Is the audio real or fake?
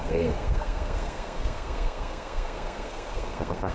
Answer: fake